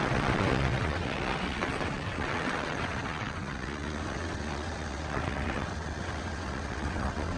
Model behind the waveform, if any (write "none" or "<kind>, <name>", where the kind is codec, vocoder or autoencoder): vocoder, WaveNeXt